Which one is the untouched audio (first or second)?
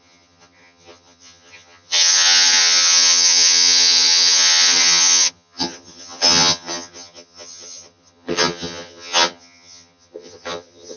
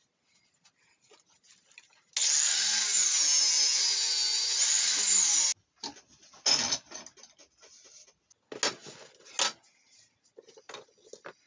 second